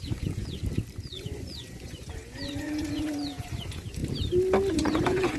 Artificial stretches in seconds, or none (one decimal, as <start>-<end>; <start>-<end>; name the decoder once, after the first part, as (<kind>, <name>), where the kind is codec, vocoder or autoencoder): 0.0-0.6 (vocoder, Vocos); 1.1-4.0; 4.7-5.4